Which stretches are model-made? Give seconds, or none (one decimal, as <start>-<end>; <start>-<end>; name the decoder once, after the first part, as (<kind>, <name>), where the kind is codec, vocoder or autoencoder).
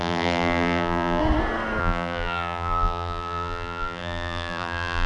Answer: 0.0-1.2 (vocoder, BigVGAN v2); 1.8-5.1